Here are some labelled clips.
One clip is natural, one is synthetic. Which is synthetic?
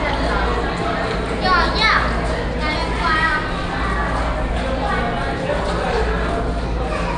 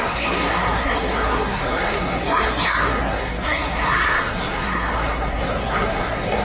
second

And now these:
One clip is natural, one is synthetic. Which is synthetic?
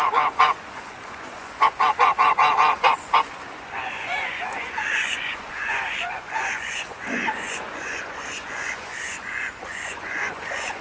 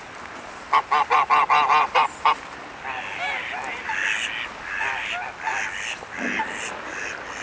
first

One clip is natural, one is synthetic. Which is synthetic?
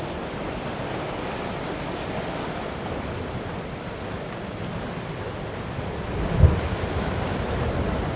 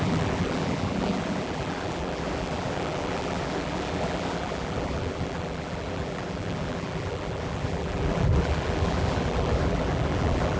second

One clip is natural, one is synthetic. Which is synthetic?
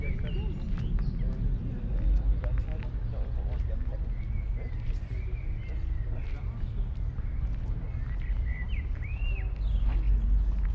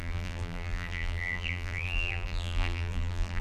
second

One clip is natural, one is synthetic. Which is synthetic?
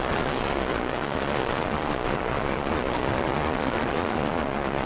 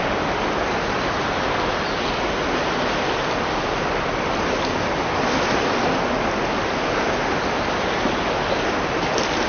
first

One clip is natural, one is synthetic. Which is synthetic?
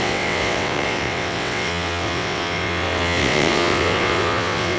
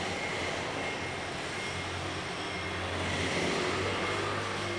first